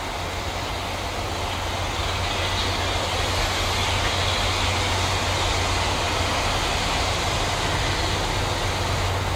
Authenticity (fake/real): real